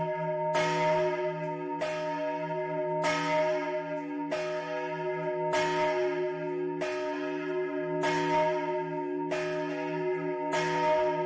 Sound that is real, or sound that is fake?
real